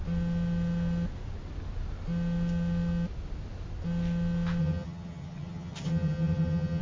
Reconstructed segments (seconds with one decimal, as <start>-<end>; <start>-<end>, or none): 4.6-6.8